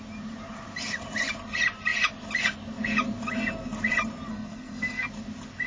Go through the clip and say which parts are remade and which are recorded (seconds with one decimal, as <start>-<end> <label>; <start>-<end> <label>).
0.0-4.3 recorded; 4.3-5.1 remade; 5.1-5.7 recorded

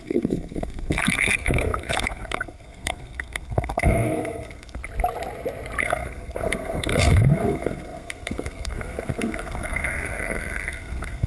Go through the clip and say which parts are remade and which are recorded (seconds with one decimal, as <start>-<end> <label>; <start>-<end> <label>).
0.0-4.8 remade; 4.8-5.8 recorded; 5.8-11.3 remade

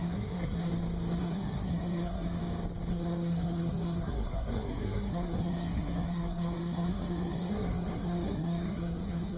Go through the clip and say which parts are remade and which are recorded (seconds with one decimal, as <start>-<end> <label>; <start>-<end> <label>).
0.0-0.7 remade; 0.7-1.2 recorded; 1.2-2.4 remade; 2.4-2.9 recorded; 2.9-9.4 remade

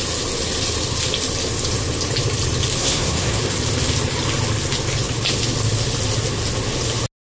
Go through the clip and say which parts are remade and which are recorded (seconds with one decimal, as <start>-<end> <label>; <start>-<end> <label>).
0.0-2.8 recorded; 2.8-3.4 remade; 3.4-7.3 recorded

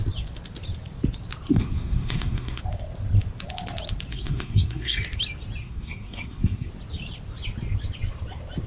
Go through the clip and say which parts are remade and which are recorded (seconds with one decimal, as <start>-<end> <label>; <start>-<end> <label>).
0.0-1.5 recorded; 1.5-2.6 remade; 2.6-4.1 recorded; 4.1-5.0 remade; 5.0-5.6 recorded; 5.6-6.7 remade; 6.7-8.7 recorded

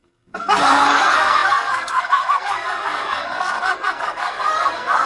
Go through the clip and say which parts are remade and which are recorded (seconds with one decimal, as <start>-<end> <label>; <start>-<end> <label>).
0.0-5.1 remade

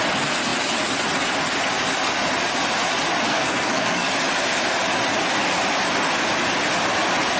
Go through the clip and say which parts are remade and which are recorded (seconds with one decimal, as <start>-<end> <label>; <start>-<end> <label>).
0.0-3.3 recorded; 3.3-4.1 remade; 4.1-7.4 recorded